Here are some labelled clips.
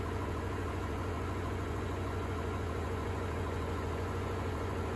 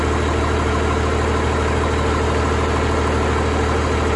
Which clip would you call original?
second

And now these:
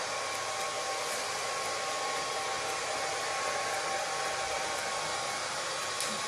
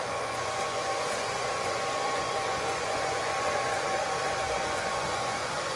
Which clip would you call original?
first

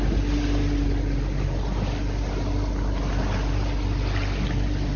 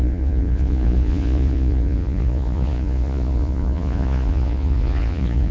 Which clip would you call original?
first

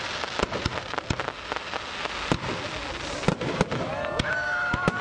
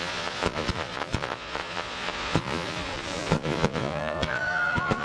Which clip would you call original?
first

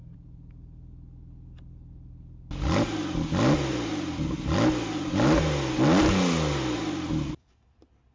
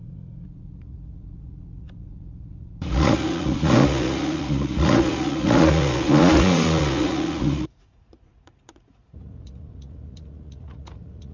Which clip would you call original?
first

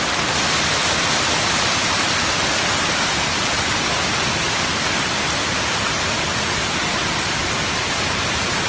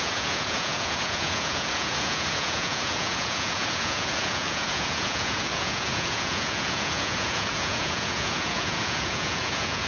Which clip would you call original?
first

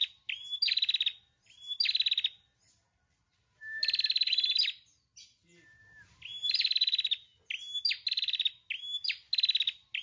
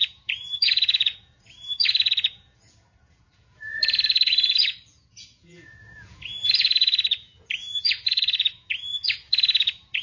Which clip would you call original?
first